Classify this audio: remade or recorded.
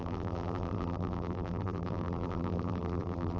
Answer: remade